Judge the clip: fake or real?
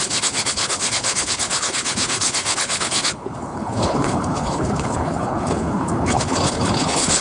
fake